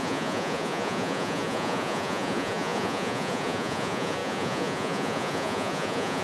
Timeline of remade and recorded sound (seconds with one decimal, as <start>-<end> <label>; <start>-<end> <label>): 0.0-6.2 remade